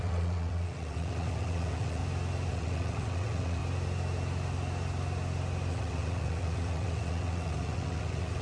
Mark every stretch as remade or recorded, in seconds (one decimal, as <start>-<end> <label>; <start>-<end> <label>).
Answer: 0.0-2.0 remade; 2.0-2.5 recorded; 2.5-3.6 remade; 3.6-5.7 recorded; 5.7-8.4 remade